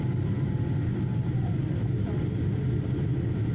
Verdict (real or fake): real